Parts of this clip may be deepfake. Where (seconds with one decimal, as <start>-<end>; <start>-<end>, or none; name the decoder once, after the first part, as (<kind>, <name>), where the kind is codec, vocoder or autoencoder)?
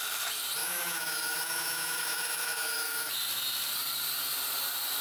0.6-3.1 (autoencoder, DAC-VAE)